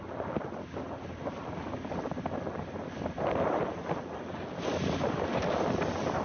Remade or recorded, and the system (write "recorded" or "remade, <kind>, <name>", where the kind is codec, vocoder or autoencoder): recorded